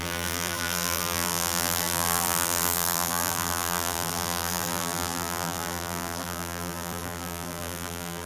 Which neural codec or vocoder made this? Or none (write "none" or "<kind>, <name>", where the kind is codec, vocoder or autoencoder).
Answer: vocoder, BigVGAN v2